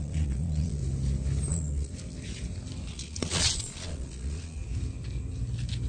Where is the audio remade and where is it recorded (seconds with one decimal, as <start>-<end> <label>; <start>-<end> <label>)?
0.0-0.8 remade; 0.8-1.5 recorded; 1.5-1.9 remade; 1.9-2.9 recorded; 2.9-4.6 remade; 4.6-5.9 recorded